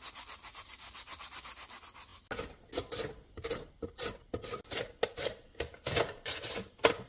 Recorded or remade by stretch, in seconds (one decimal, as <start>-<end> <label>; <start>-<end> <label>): 0.0-7.1 recorded